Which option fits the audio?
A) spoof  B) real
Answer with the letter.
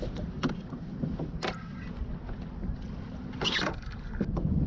B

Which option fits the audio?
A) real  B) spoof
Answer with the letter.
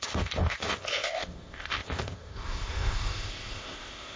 B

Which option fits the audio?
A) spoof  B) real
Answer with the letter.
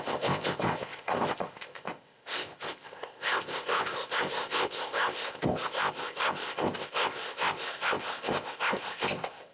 A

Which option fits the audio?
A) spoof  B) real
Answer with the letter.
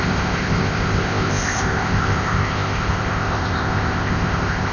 A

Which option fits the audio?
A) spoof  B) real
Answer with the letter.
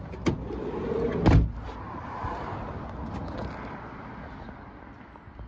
B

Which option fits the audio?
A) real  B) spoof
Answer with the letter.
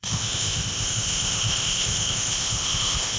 B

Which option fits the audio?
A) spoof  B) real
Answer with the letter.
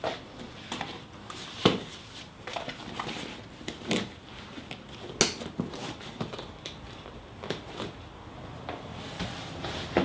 B